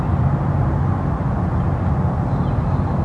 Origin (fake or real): real